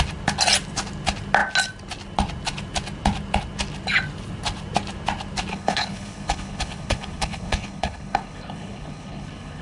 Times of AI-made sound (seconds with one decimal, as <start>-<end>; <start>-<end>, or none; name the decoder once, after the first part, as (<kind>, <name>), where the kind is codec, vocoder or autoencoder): 5.5-9.6 (codec, HILCodec)